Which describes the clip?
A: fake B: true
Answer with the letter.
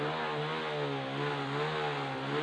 B